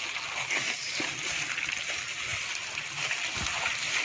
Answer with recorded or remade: recorded